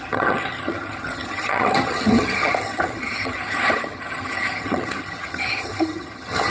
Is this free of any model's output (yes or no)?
no